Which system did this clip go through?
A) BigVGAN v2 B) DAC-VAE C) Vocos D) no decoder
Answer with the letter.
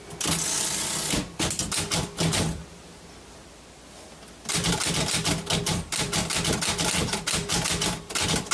D